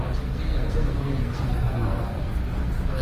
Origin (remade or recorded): remade